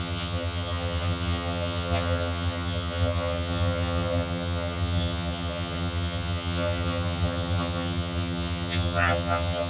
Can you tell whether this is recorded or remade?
remade